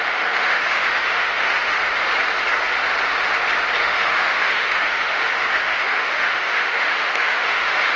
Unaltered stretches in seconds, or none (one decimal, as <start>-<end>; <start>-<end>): 2.1-3.8